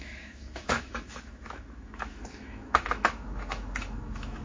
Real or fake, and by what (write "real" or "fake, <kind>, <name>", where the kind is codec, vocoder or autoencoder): fake, autoencoder, DAC-VAE